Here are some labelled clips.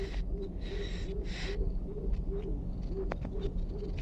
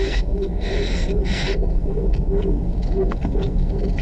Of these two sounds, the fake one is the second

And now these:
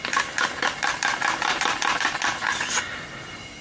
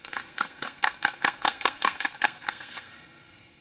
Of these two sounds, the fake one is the second